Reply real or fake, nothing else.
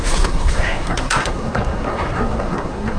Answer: fake